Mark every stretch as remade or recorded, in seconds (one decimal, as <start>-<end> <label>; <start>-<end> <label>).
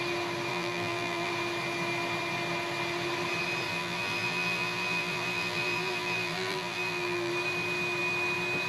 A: 0.0-0.5 recorded; 0.5-1.3 remade; 1.3-3.7 recorded; 3.7-7.3 remade; 7.3-8.7 recorded